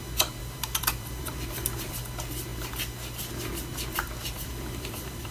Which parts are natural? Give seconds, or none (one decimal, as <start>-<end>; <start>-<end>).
0.0-0.4; 1.9-4.2